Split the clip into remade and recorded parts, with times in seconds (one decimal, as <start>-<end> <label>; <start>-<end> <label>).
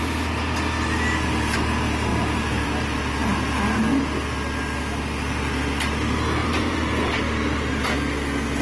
0.0-2.1 recorded; 2.1-2.8 remade; 2.8-6.4 recorded; 6.4-7.2 remade; 7.2-8.6 recorded